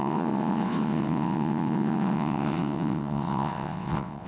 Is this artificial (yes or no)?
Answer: yes